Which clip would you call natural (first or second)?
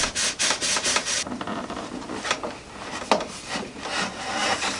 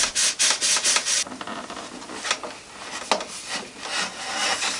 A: second